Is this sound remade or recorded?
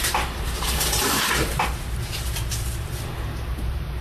remade